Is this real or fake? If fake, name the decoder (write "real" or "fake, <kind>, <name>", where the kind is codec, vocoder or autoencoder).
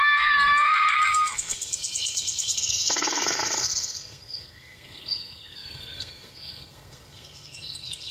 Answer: fake, codec, SNAC